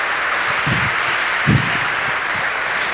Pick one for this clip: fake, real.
real